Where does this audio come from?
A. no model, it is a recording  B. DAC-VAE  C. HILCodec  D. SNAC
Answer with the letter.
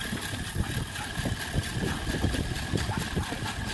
A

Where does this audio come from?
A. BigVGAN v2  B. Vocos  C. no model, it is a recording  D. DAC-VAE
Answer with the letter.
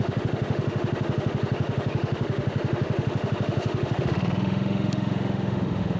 D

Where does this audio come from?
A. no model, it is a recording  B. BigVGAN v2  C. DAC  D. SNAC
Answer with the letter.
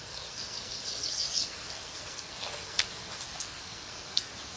D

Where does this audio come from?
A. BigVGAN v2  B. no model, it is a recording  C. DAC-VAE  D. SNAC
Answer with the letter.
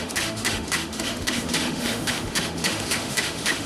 C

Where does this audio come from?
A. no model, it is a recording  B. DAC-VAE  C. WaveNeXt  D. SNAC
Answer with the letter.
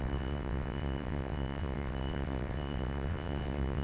C